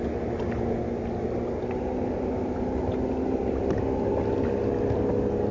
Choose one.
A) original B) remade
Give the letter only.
A